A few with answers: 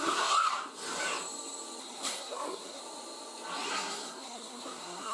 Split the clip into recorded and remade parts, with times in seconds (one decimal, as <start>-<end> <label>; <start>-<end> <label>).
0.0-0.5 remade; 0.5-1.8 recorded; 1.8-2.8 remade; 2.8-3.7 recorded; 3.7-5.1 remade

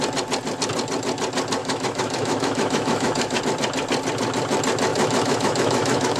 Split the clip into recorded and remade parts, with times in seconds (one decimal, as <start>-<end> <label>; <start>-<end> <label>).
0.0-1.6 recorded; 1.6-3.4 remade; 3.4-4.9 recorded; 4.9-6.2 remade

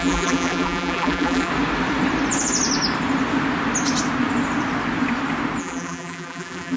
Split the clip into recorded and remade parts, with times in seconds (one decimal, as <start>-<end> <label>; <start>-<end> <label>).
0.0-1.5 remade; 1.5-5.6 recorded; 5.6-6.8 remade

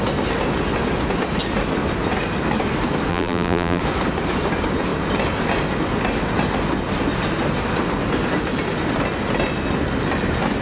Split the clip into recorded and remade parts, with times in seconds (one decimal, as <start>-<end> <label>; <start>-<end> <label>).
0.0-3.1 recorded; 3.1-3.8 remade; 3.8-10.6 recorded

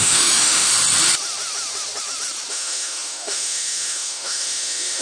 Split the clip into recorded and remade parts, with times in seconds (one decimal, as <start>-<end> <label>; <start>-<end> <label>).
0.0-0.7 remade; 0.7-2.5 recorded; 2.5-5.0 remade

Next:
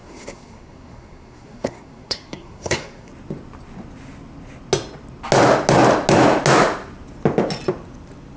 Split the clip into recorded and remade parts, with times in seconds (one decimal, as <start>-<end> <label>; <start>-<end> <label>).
0.0-3.1 remade; 3.1-8.4 recorded

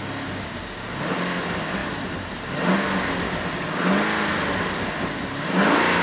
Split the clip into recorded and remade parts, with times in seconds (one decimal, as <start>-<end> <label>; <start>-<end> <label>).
0.0-6.0 recorded